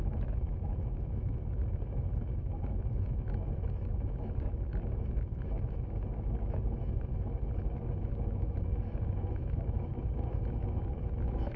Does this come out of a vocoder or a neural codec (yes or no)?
yes